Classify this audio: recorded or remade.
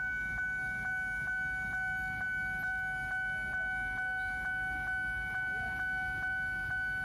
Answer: recorded